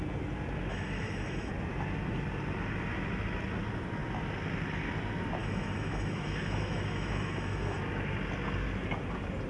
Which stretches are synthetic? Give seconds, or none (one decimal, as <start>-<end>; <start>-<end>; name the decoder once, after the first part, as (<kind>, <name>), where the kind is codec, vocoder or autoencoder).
0.7-1.5 (autoencoder, DAC-VAE); 5.4-7.8